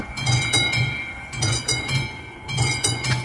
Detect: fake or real fake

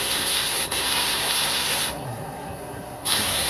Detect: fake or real fake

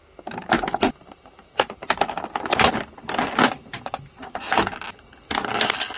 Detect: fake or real real